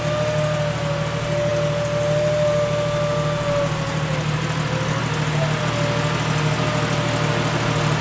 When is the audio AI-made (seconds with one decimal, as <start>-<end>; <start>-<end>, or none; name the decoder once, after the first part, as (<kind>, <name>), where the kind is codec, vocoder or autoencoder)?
none